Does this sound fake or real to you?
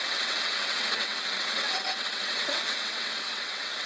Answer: fake